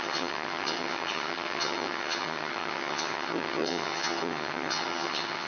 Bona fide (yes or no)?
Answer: no